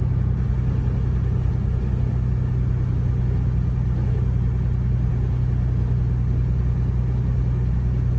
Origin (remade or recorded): recorded